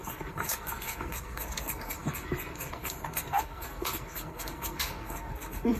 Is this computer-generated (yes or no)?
yes